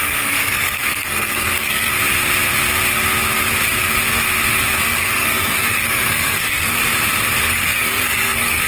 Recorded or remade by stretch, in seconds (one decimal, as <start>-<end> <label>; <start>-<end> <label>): 0.0-1.9 remade; 1.9-4.9 recorded; 4.9-6.8 remade; 6.8-7.4 recorded; 7.4-8.7 remade